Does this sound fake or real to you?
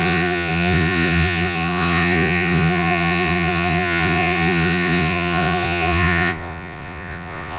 fake